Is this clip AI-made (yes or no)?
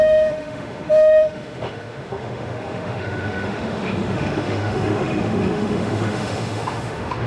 yes